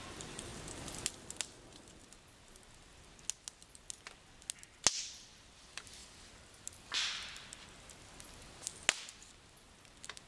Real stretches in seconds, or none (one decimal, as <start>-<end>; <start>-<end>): 0.5-5.0; 6.0-10.3